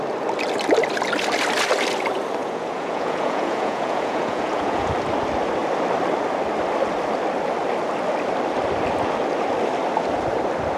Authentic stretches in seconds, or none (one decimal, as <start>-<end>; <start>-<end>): 0.0-2.4; 4.9-10.8